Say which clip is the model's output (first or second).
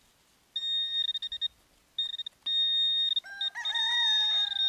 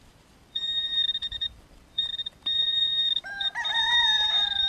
second